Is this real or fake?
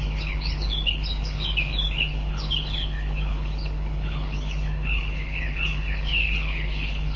fake